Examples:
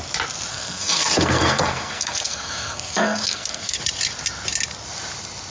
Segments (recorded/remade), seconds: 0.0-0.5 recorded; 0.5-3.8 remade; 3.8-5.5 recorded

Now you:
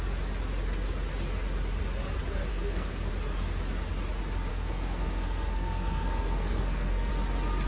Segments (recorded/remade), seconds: 0.0-2.5 recorded; 2.5-3.1 remade; 3.1-4.5 recorded; 4.5-7.1 remade; 7.1-7.7 recorded

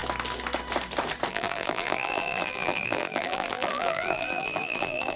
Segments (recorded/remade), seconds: 0.0-1.3 recorded; 1.3-5.2 remade

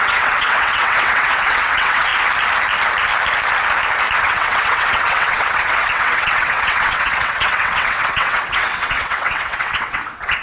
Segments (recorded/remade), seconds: 0.0-2.1 remade; 2.1-4.2 recorded; 4.2-10.4 remade